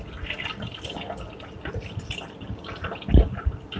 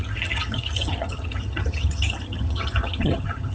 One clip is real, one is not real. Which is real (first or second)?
first